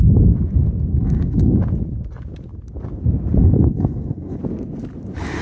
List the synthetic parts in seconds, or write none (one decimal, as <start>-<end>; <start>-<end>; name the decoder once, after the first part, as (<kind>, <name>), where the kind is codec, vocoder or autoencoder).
0.9-1.6 (codec, SNAC); 3.4-4.4